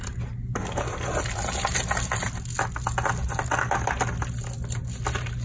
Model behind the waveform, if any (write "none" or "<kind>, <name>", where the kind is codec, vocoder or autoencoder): none